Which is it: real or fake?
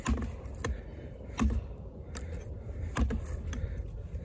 real